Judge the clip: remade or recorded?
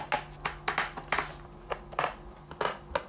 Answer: recorded